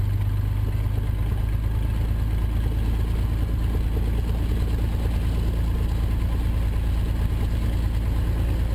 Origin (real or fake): real